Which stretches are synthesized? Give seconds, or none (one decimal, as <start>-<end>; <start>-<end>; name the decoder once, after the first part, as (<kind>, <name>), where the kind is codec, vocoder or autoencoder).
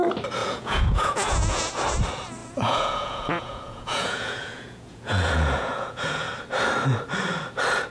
0.4-1.7 (vocoder, Vocos); 2.4-6.3